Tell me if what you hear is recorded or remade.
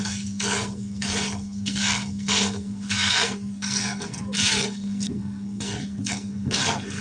remade